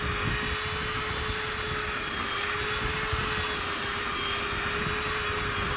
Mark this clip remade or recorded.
recorded